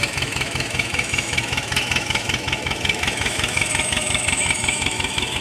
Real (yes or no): no